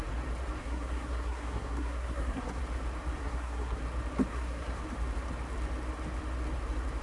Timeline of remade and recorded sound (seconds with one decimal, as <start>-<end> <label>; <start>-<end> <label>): 0.0-0.6 recorded; 0.6-2.6 remade; 2.6-3.2 recorded; 3.2-3.8 remade; 3.8-4.3 recorded; 4.3-4.8 remade; 4.8-7.0 recorded